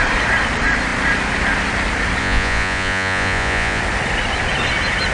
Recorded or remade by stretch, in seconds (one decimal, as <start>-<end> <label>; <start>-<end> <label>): 0.0-2.2 recorded; 2.2-3.8 remade; 3.8-5.1 recorded